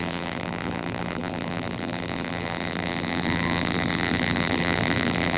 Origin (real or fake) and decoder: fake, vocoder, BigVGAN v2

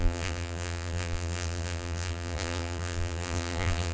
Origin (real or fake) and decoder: fake, vocoder, BigVGAN v2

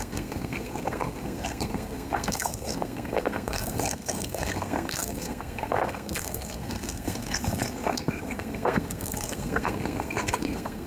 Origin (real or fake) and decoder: fake, codec, SNAC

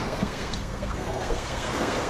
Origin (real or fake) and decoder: fake, codec, SNAC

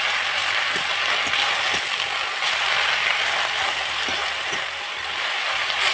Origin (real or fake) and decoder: real